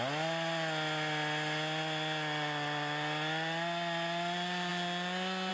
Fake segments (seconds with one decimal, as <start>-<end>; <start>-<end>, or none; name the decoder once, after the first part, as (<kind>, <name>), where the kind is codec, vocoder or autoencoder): none